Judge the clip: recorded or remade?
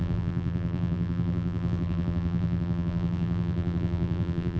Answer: remade